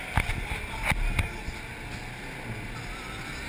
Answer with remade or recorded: recorded